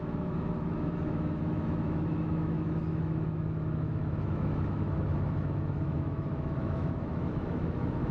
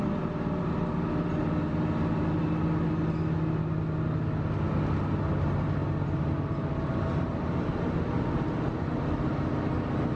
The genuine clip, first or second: second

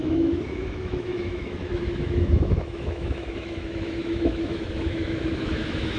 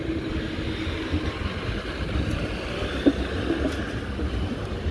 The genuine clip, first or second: second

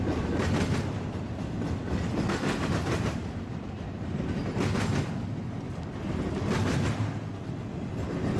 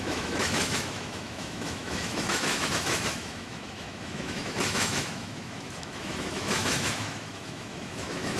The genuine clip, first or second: first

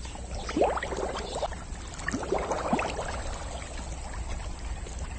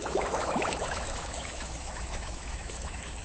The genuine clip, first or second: first